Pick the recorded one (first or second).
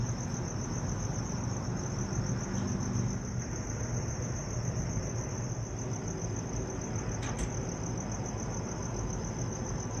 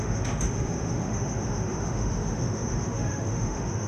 first